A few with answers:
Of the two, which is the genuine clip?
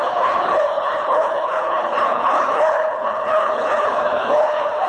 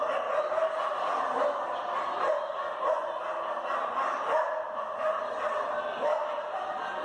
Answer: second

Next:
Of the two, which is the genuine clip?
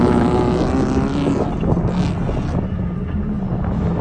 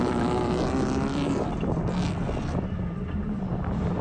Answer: first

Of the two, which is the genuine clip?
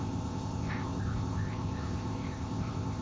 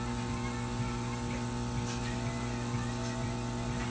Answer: second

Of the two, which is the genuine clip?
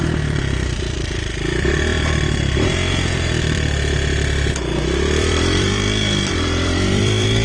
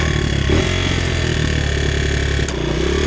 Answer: second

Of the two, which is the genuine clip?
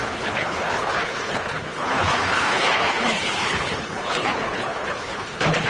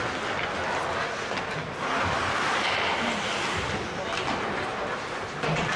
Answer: second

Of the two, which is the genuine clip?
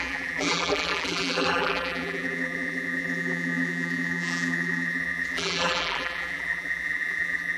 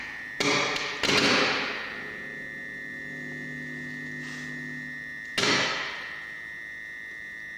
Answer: second